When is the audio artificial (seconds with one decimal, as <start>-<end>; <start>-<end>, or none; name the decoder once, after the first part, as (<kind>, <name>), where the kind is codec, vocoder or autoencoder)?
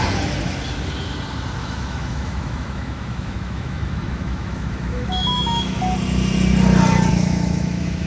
1.6-5.8 (autoencoder, DAC-VAE); 7.1-8.1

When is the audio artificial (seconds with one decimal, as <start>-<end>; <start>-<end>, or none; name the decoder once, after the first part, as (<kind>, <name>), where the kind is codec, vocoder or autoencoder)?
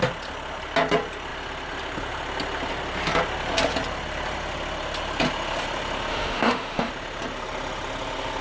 6.1-6.9 (autoencoder, DAC-VAE)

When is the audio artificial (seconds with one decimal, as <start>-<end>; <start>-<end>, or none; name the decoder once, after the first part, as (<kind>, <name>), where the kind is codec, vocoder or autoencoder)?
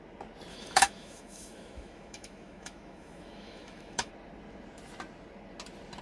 0.5-4.1 (autoencoder, DAC-VAE)